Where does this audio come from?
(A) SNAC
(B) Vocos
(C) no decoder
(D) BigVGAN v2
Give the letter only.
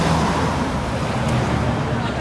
C